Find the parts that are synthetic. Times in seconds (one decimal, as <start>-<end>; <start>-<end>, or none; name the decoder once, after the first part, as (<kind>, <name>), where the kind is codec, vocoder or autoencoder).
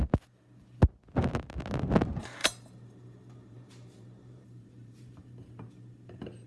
2.4-6.5 (vocoder, BigVGAN v2)